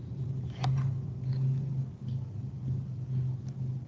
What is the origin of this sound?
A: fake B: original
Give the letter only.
B